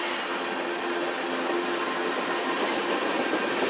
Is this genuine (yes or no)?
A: yes